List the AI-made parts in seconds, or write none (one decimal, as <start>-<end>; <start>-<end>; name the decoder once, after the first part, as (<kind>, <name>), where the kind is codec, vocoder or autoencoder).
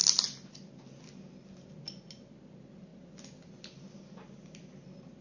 none